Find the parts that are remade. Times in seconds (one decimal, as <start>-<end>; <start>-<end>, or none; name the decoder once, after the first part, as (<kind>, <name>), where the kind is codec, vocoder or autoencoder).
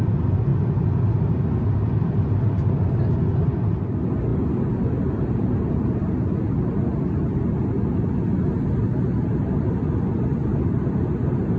none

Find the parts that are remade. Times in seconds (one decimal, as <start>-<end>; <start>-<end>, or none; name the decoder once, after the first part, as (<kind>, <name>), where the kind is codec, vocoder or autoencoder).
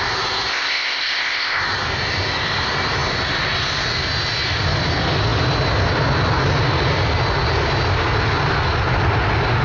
0.5-1.6 (codec, ZipCodec)